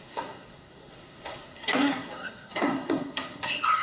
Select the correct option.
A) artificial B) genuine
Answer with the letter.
A